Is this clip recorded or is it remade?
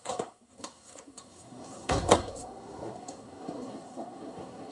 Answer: remade